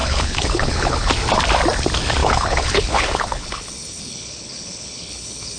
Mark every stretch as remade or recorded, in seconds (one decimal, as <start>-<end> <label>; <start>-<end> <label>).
0.0-1.1 remade; 1.1-2.2 recorded; 2.2-5.6 remade